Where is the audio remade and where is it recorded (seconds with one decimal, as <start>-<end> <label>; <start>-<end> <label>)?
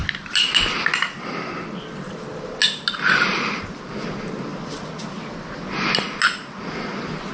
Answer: 0.0-7.3 recorded